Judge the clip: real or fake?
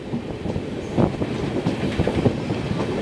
real